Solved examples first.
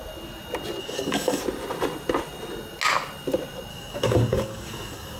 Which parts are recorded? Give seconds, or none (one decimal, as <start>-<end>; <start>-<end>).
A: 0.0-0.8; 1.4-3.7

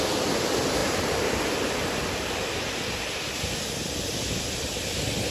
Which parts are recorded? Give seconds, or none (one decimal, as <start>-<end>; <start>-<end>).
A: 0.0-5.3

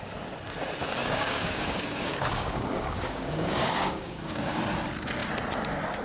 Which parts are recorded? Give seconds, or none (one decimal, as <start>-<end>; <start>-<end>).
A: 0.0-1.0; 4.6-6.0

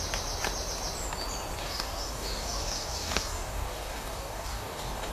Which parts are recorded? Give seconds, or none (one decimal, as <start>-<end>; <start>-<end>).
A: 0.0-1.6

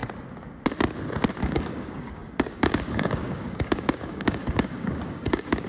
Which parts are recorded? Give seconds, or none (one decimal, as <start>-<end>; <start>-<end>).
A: 0.0-1.4

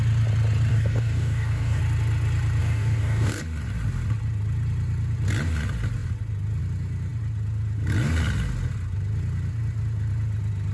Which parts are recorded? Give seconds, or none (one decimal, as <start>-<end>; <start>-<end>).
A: 0.0-0.7; 1.8-2.6; 3.4-10.7

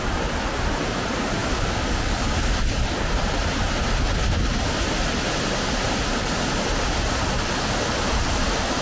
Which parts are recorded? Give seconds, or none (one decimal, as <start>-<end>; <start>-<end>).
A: 0.0-8.8